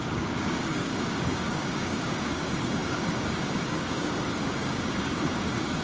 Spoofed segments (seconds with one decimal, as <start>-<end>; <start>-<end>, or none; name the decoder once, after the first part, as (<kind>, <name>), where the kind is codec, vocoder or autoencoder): 0.0-5.8 (codec, DAC)